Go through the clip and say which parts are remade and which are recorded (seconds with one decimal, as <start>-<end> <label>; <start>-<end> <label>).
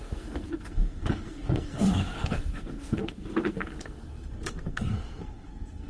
0.0-5.9 remade